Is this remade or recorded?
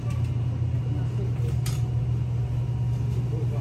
recorded